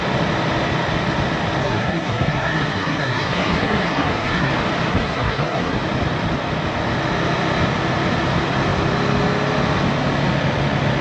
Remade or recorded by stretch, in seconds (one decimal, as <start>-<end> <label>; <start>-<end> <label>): 0.0-1.6 recorded; 1.6-4.5 remade; 4.5-4.9 recorded; 4.9-5.8 remade; 5.8-11.0 recorded